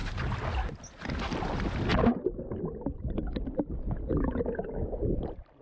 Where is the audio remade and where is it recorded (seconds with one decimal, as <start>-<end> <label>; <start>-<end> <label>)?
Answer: 0.0-5.6 recorded